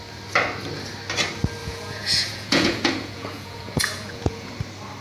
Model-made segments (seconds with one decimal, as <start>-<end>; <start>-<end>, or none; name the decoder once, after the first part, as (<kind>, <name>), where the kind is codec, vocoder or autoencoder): 1.6-4.5 (vocoder, Vocos)